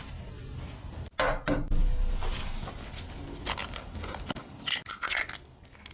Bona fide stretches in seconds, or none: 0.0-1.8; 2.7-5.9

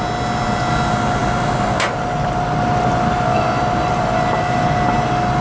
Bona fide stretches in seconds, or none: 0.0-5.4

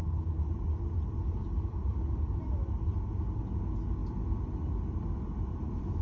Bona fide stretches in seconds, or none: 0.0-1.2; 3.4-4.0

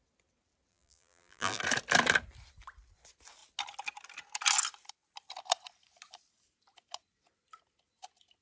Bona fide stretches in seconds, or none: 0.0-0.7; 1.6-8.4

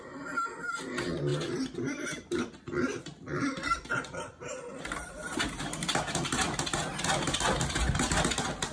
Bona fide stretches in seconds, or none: 0.0-1.3; 2.4-5.2; 6.0-8.7

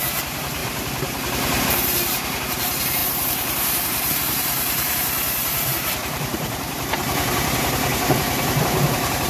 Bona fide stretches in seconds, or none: 0.6-1.6

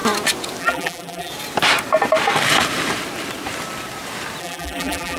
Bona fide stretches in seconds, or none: 0.0-0.6; 1.3-4.4